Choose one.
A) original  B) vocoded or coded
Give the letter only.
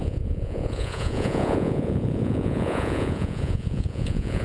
B